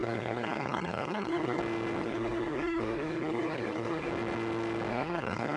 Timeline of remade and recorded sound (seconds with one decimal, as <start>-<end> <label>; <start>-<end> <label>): 0.0-1.6 remade; 1.6-2.0 recorded; 2.0-4.1 remade; 4.1-4.9 recorded; 4.9-5.6 remade